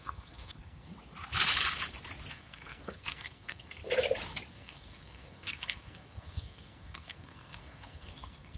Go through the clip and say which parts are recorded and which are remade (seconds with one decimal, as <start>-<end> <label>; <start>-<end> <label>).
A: 0.0-0.9 remade; 0.9-2.3 recorded; 2.3-3.8 remade; 3.8-4.5 recorded; 4.5-8.6 remade